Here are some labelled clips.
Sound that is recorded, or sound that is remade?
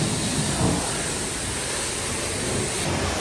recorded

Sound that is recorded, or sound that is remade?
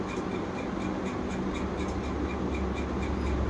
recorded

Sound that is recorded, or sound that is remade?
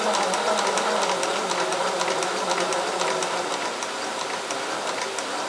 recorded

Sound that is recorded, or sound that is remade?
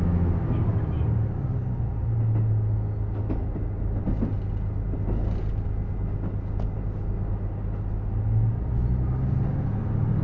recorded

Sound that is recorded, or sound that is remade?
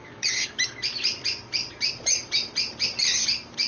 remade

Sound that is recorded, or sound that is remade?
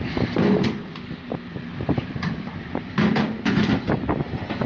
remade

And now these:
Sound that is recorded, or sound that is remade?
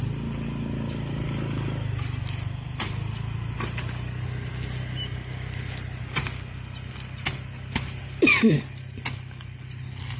recorded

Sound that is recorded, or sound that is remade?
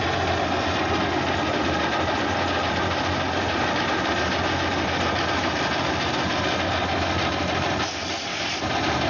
recorded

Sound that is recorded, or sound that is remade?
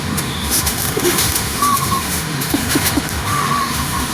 remade